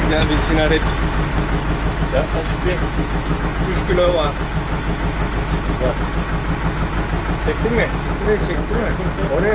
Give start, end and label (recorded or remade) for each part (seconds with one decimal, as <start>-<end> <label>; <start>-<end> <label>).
0.0-1.3 recorded; 1.3-3.4 remade; 3.4-9.5 recorded